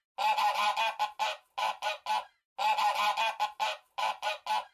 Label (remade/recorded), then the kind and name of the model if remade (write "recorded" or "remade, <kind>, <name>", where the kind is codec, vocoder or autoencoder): recorded